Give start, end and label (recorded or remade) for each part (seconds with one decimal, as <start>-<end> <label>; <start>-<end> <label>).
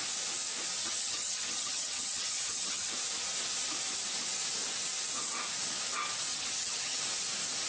0.0-0.8 recorded; 0.8-2.9 remade; 2.9-6.3 recorded; 6.3-7.0 remade; 7.0-7.7 recorded